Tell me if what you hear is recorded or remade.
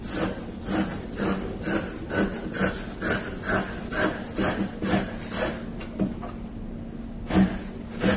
recorded